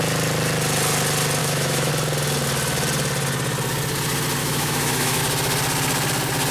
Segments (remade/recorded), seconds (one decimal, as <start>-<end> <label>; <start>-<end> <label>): 0.0-1.4 recorded; 1.4-1.9 remade; 1.9-4.4 recorded; 4.4-5.2 remade; 5.2-6.5 recorded